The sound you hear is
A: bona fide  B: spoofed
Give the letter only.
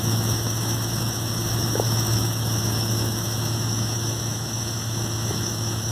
B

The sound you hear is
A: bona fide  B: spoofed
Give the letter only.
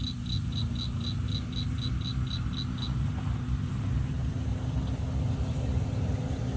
A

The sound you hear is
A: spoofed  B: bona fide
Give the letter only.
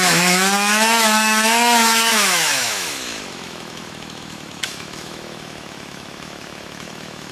A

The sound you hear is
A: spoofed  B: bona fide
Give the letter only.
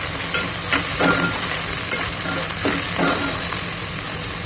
B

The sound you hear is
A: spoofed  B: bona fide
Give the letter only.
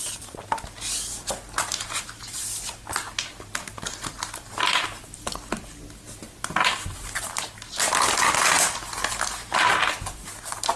B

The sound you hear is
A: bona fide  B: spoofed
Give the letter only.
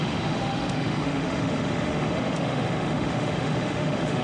B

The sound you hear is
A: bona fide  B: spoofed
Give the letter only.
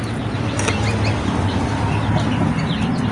A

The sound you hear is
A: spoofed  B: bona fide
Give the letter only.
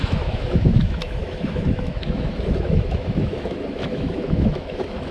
A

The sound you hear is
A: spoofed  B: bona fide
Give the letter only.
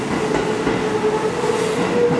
B